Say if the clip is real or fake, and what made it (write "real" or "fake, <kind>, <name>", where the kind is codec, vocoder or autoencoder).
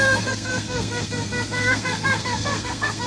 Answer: fake, codec, SNAC